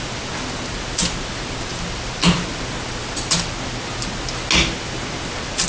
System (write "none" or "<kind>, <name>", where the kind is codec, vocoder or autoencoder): none